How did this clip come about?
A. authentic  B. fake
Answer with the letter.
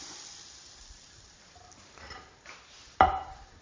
A